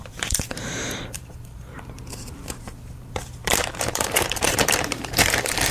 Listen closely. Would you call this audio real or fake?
fake